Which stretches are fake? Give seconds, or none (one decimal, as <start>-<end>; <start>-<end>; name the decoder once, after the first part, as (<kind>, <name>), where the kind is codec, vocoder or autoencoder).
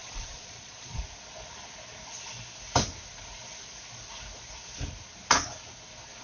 0.0-1.0 (vocoder, Vocos)